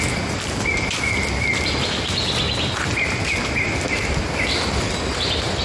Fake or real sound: real